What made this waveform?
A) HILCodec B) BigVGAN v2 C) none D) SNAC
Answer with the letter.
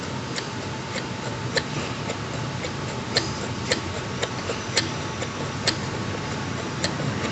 C